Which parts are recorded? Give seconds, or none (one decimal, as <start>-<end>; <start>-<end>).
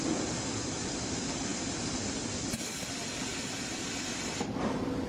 0.0-5.1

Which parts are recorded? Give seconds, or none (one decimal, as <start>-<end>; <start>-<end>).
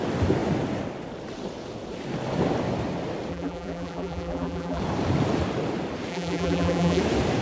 0.0-3.3; 4.8-6.1; 7.0-7.4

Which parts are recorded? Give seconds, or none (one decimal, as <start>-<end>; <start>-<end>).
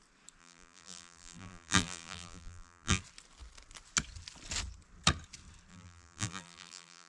0.0-0.4; 3.0-5.7